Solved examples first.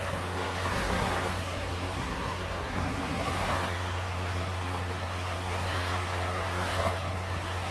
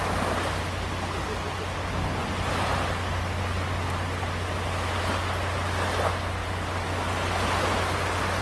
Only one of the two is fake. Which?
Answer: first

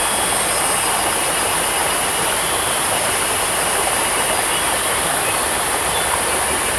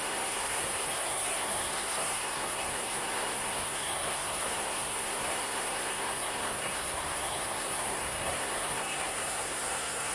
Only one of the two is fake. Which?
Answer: second